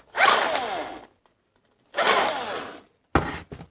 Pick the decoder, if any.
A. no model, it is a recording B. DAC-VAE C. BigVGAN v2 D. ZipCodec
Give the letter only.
A